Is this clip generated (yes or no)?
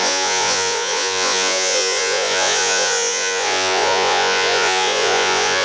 yes